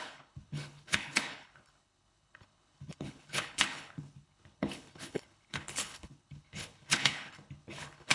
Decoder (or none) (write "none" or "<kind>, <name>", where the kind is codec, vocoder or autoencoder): codec, HILCodec